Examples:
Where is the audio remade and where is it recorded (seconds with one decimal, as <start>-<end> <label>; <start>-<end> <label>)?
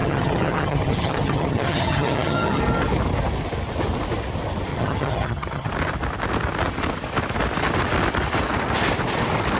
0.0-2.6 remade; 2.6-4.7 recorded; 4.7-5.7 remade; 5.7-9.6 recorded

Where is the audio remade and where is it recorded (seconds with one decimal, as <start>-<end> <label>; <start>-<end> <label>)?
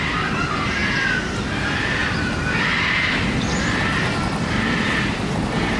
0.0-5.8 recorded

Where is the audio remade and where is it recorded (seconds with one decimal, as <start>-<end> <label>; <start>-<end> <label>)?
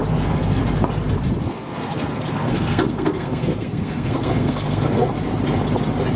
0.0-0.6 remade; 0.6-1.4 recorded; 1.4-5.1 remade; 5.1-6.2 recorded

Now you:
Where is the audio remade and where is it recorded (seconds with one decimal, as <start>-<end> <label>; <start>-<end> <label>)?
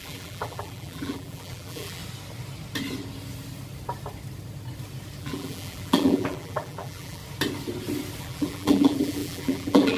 0.0-2.0 remade; 2.0-5.2 recorded; 5.2-7.2 remade; 7.2-8.2 recorded; 8.2-10.0 remade